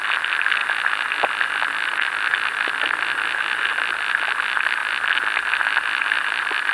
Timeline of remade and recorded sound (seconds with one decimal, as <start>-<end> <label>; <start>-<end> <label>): 0.0-0.6 remade; 0.6-3.7 recorded; 3.7-4.8 remade; 4.8-5.5 recorded; 5.5-6.7 remade